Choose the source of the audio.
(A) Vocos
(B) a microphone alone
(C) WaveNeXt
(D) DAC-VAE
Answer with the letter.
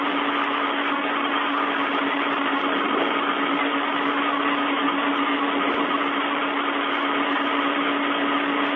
B